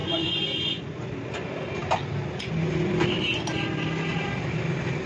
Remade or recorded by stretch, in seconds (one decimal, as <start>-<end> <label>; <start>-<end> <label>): 0.0-0.9 remade; 0.9-5.1 recorded